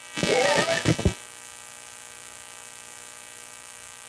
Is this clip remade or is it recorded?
remade